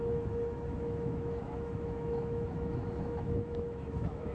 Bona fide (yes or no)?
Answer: no